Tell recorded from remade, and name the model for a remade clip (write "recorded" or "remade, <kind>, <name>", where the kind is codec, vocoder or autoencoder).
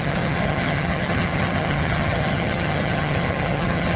remade, vocoder, HiFi-GAN